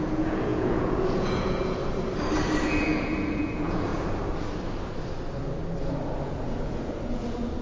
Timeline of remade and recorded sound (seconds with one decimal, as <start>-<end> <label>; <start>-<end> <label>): 0.0-1.8 remade; 1.8-2.6 recorded; 2.6-3.9 remade; 3.9-6.2 recorded; 6.2-7.6 remade